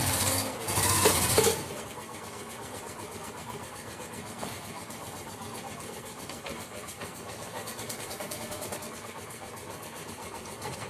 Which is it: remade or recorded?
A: remade